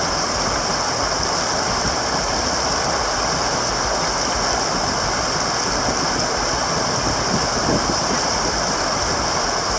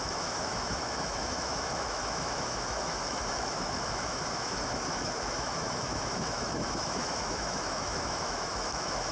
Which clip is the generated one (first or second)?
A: second